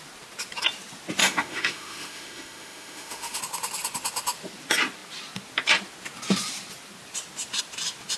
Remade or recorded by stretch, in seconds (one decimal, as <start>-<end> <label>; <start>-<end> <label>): 0.0-1.2 recorded; 1.2-3.4 remade; 3.4-8.2 recorded